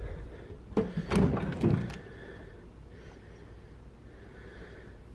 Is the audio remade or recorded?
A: recorded